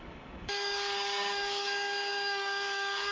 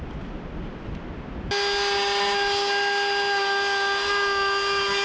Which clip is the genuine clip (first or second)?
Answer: second